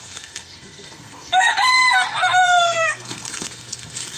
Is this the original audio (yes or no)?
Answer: no